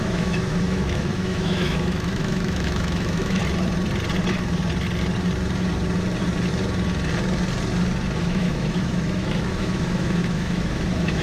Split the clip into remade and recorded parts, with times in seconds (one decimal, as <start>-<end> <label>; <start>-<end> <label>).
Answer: 0.0-3.4 remade; 3.4-8.2 recorded; 8.2-11.2 remade